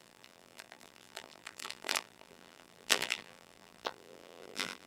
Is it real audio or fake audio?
fake